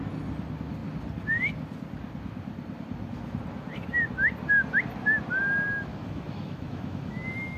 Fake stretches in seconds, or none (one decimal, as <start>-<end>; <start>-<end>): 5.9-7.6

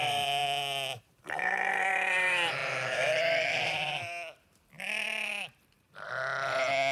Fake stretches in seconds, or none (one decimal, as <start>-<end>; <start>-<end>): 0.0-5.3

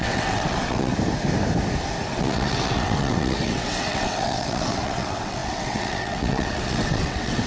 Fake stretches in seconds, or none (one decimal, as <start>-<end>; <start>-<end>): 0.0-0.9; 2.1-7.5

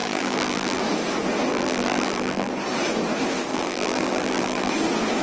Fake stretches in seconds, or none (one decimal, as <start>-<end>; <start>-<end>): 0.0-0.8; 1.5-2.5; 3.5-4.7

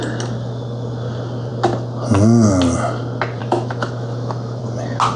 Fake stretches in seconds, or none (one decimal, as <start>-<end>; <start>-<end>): 3.4-4.6

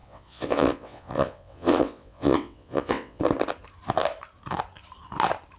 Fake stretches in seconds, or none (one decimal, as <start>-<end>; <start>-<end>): 0.0-3.2

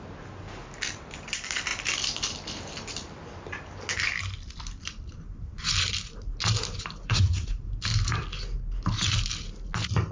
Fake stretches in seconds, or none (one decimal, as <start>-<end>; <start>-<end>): 7.0-7.7